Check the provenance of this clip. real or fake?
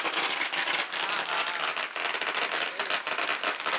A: real